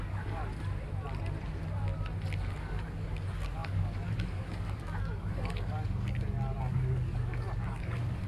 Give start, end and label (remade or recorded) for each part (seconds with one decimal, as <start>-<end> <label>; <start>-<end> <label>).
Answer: 0.0-0.4 remade; 0.4-2.6 recorded; 2.6-8.3 remade